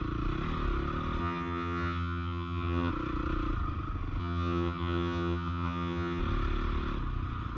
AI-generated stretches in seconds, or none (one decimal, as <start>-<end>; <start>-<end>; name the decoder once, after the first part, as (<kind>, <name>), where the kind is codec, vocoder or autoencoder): 1.2-2.9 (vocoder, HiFi-GAN); 4.2-6.2